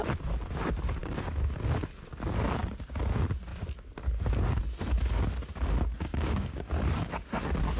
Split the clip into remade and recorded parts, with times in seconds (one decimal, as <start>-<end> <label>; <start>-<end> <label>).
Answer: 0.0-6.1 recorded; 6.1-6.8 remade; 6.8-7.8 recorded